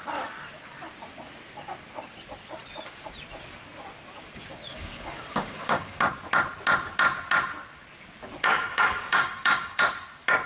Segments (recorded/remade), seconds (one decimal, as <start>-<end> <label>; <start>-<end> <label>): 0.0-4.7 recorded; 4.7-6.0 remade; 6.0-8.5 recorded; 8.5-9.8 remade; 9.8-10.5 recorded